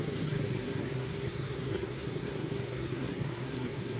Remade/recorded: remade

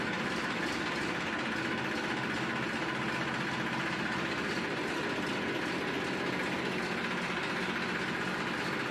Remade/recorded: recorded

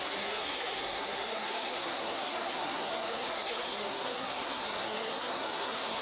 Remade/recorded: remade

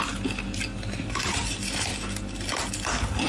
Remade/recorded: recorded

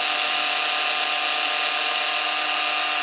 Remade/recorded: recorded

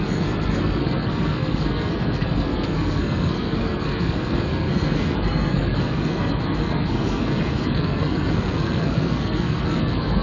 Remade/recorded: remade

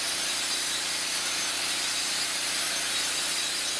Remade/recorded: recorded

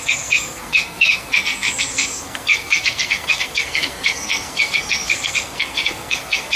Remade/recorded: remade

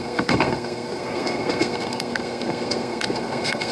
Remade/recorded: remade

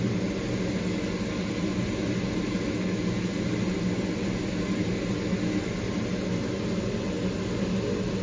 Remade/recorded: recorded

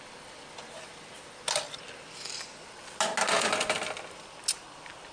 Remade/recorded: recorded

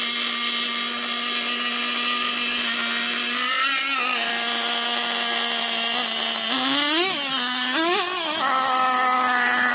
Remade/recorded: recorded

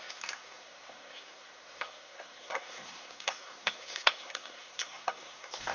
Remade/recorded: remade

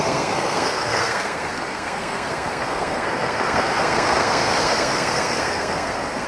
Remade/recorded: remade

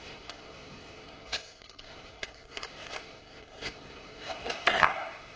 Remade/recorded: remade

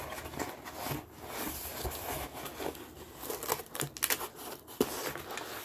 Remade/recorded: recorded